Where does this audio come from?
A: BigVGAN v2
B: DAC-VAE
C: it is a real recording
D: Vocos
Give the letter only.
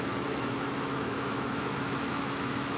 B